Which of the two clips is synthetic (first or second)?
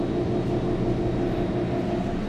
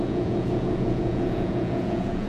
second